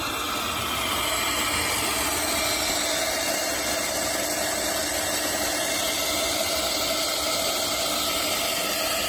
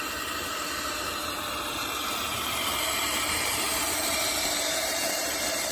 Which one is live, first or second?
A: first